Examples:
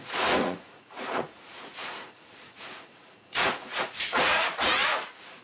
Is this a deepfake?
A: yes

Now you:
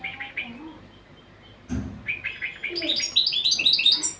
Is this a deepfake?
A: no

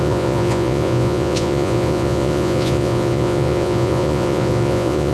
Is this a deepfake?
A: yes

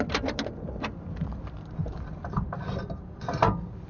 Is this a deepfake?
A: no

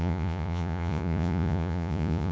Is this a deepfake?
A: yes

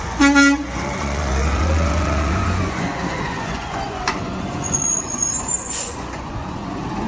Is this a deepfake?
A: yes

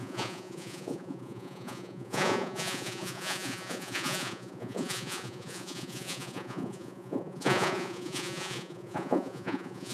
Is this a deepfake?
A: yes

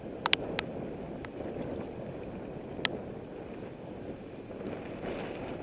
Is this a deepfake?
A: no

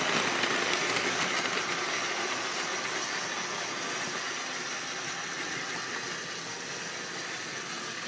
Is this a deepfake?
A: no